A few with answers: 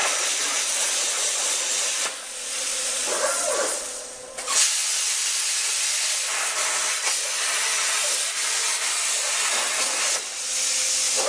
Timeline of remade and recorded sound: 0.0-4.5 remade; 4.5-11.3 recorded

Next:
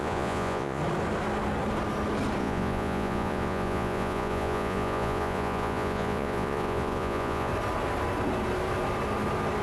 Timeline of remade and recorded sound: 0.0-0.8 remade; 0.8-2.4 recorded; 2.4-7.5 remade; 7.5-9.6 recorded

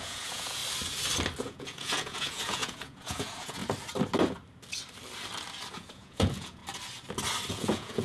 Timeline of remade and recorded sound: 0.0-0.6 remade; 0.6-1.4 recorded; 1.4-3.6 remade; 3.6-5.7 recorded; 5.7-6.6 remade; 6.6-7.5 recorded; 7.5-8.0 remade

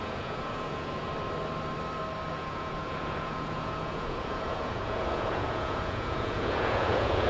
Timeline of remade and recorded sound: 0.0-1.1 remade; 1.1-2.3 recorded; 2.3-7.3 remade

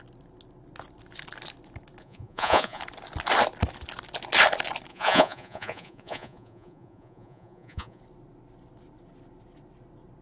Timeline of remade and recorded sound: 0.0-2.0 recorded; 2.0-2.8 remade; 2.8-4.9 recorded; 4.9-8.0 remade; 8.0-10.2 recorded